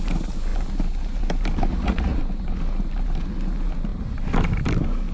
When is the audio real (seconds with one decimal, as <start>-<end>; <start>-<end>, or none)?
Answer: 0.0-1.7; 2.2-5.1